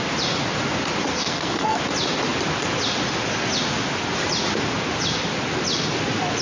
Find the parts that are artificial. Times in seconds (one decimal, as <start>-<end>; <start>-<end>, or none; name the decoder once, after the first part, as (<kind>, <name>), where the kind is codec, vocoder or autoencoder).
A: 1.1-1.8 (codec, SNAC)